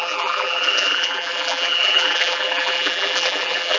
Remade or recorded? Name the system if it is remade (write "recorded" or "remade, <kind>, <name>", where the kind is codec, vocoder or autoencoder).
remade, vocoder, BigVGAN v2